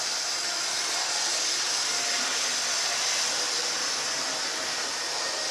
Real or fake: real